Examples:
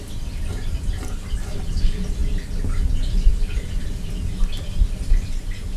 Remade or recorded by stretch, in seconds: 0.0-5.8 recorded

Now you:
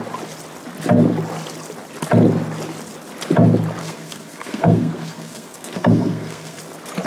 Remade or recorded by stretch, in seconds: 0.0-3.8 recorded; 3.8-6.6 remade; 6.6-7.1 recorded

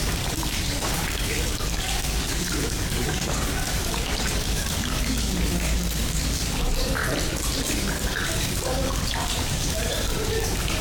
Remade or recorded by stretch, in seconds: 0.0-7.0 remade; 7.0-7.6 recorded; 7.6-10.8 remade

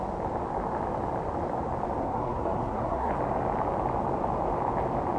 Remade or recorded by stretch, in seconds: 0.0-2.0 recorded; 2.0-3.1 remade; 3.1-5.2 recorded

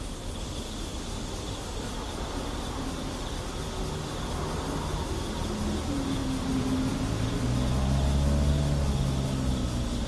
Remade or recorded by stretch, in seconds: 0.0-10.1 recorded

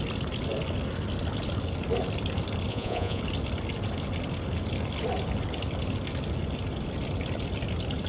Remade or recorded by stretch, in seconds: 0.0-2.7 recorded; 2.7-3.2 remade; 3.2-8.1 recorded

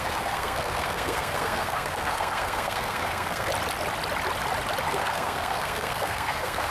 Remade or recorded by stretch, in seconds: 0.0-3.5 remade; 3.5-4.9 recorded; 4.9-6.7 remade

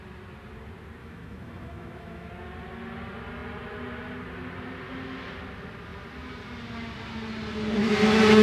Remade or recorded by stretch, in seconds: 0.0-1.0 recorded; 1.0-2.3 remade; 2.3-8.4 recorded